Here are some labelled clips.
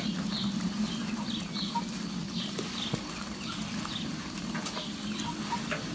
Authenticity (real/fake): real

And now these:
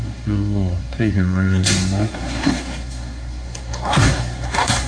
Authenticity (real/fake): fake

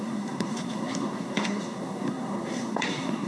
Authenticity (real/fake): fake